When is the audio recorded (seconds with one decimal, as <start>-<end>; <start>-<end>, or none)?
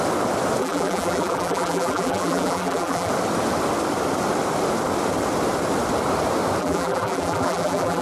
0.0-0.6; 3.1-6.6